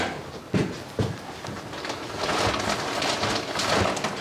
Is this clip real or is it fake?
real